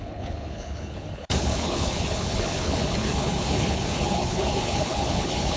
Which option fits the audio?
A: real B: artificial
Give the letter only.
B